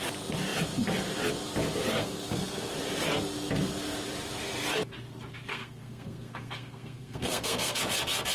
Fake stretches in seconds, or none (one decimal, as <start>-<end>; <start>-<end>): 2.0-2.7; 5.5-7.8